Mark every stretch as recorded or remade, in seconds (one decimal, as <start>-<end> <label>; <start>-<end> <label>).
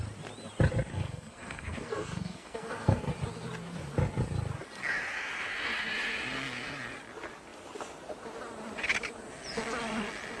0.0-0.9 recorded; 0.9-3.1 remade; 3.1-10.4 recorded